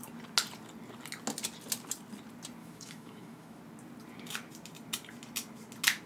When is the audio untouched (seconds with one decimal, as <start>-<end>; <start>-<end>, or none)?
0.0-2.6; 3.6-6.1